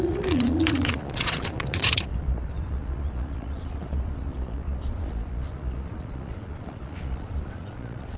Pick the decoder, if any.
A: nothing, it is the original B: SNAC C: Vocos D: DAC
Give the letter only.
C